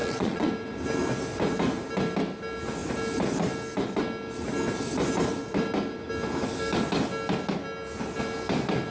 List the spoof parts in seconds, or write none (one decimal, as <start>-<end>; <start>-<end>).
0.0-0.5